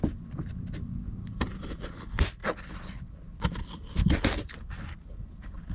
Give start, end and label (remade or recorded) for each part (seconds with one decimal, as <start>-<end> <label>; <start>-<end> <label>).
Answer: 0.0-5.7 recorded